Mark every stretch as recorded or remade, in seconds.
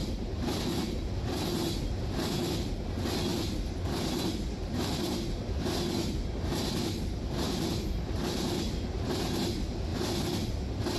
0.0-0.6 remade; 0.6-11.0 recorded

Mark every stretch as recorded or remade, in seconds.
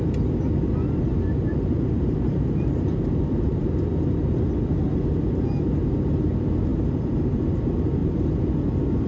0.0-1.5 recorded; 1.5-3.6 remade; 3.6-6.7 recorded; 6.7-7.2 remade; 7.2-8.0 recorded; 8.0-8.5 remade; 8.5-9.1 recorded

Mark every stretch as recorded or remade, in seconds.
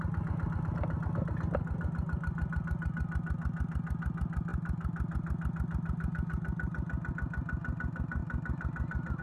0.0-8.2 recorded; 8.2-9.2 remade